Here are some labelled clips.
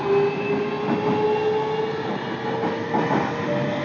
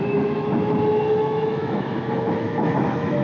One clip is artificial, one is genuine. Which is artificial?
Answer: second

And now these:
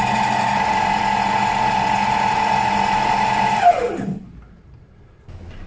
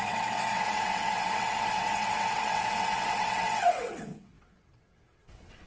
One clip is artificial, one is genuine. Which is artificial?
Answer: second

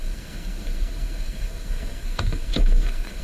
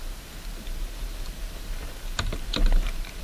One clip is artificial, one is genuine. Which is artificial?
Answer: first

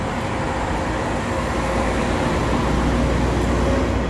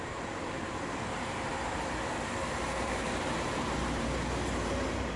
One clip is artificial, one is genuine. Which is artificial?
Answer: second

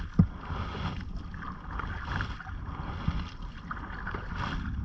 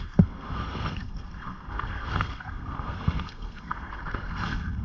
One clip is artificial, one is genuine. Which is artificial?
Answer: second